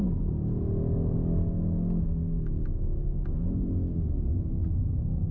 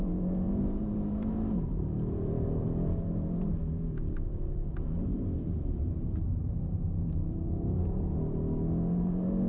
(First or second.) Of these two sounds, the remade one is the second